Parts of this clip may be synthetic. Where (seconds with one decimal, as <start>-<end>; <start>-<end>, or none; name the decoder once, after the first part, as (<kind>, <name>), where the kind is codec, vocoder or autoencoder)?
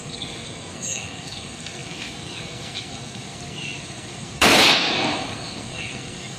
0.0-6.4 (codec, SNAC)